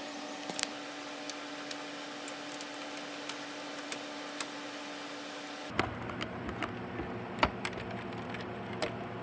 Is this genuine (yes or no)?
yes